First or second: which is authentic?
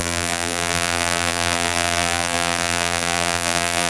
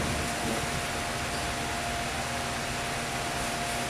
second